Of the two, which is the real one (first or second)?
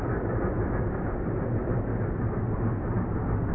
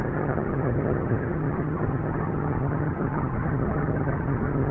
first